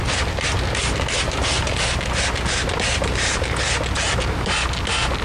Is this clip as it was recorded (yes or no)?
yes